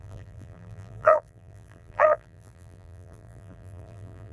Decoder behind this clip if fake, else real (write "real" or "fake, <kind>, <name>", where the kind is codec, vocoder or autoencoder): fake, vocoder, BigVGAN v2